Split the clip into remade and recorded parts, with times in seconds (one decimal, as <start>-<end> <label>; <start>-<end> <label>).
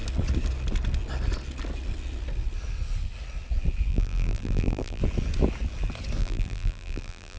0.0-3.9 recorded; 3.9-5.0 remade; 5.0-6.2 recorded; 6.2-7.4 remade